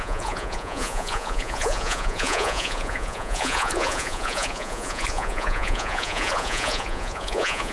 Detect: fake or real fake